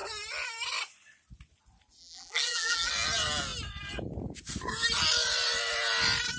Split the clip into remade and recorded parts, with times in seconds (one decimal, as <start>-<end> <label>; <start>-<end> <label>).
0.0-2.0 recorded; 2.0-2.9 remade; 2.9-6.4 recorded